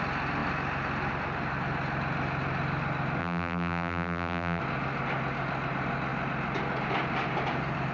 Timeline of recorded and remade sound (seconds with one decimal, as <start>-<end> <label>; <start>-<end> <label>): 0.0-3.2 recorded; 3.2-4.6 remade; 4.6-7.9 recorded